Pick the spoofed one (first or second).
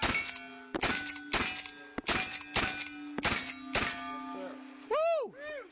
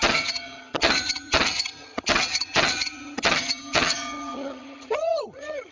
second